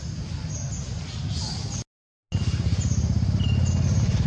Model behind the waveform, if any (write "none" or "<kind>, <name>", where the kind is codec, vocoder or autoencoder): none